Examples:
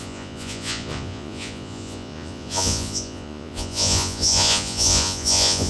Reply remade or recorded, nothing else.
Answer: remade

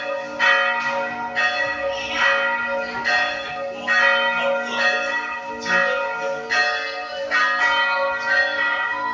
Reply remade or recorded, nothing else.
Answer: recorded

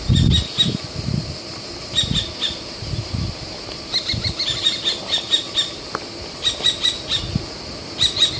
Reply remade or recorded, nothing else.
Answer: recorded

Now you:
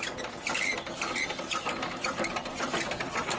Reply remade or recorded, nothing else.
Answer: recorded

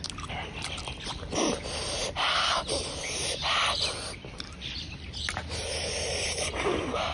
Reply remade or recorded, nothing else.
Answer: recorded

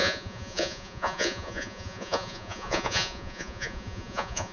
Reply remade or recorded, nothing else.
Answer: remade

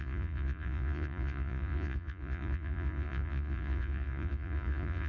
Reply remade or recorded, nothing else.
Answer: remade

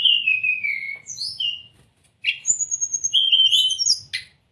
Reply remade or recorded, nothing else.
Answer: recorded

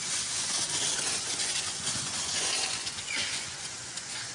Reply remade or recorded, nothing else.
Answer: remade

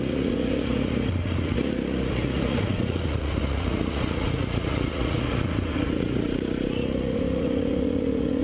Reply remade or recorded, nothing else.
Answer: remade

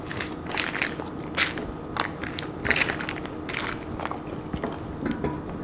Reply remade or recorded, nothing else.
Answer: recorded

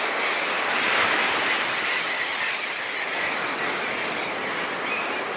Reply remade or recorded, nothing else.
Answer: recorded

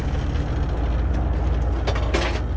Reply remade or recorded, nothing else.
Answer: recorded